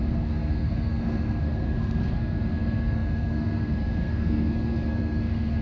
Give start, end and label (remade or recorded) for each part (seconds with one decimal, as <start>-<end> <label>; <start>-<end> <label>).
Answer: 0.0-5.6 remade